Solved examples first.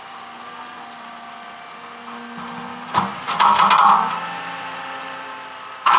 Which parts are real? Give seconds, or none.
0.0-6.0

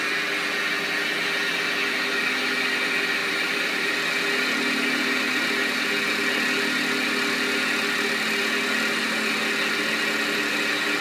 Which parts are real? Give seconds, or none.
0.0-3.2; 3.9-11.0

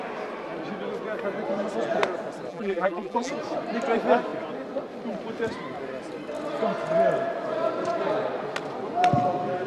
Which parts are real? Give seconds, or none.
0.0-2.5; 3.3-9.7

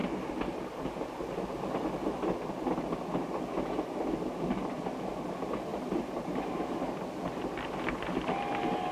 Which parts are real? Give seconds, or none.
0.0-5.7; 6.8-8.9

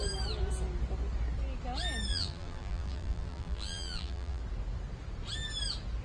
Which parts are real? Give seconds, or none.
0.0-2.1; 4.4-6.0